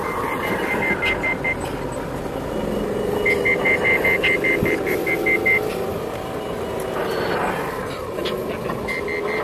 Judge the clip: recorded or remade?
recorded